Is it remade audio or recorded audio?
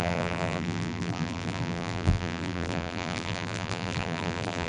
remade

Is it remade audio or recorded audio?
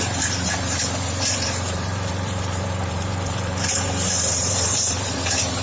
remade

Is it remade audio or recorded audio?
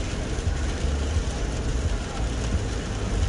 recorded